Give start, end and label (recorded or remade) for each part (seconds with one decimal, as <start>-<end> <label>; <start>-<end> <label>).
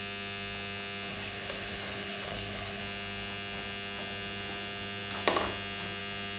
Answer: 0.0-1.1 recorded; 1.1-2.8 remade; 2.8-6.4 recorded